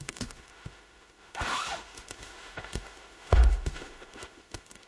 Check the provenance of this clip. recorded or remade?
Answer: remade